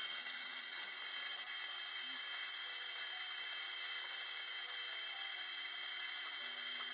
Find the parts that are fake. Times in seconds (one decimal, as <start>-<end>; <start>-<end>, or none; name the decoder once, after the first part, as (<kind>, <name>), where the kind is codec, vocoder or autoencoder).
0.0-0.8 (vocoder, Vocos)